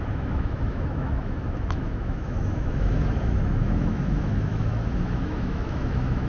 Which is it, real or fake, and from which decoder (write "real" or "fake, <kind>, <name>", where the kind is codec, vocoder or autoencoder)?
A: fake, autoencoder, DAC-VAE